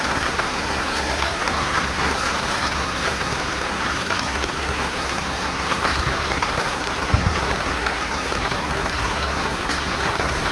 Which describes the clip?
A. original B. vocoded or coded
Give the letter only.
B